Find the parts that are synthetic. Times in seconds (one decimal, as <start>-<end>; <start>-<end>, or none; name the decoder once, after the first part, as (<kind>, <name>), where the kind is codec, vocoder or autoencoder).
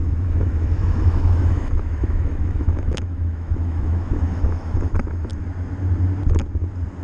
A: 0.0-5.3 (autoencoder, DAC-VAE)